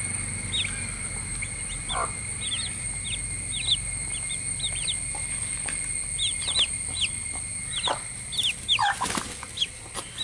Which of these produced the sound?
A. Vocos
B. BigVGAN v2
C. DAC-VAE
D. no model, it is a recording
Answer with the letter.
D